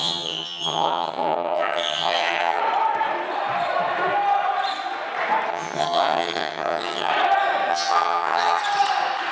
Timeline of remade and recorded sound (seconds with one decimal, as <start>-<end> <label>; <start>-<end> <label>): 0.0-2.6 remade; 2.6-5.5 recorded; 5.5-7.1 remade; 7.1-7.7 recorded; 7.7-8.6 remade; 8.6-9.3 recorded